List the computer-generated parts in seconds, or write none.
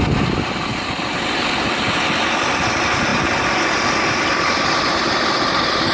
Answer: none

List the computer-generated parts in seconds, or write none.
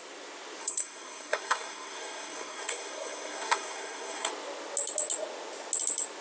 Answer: 0.6-4.3 (codec, SNAC)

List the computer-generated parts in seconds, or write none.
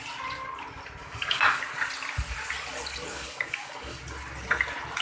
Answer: 1.0-1.6 (codec, DAC); 3.1-4.0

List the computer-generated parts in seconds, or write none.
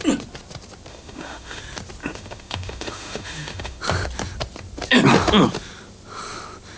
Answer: 0.9-1.6 (autoencoder, DAC-VAE); 2.0-3.8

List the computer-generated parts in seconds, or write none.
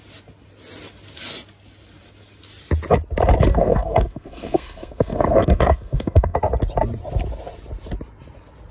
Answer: 3.5-6.4 (codec, SNAC)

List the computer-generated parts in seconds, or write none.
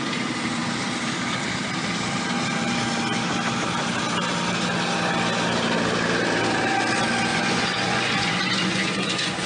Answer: 7.3-9.5 (vocoder, Vocos)